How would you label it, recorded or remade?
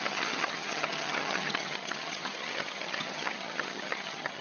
remade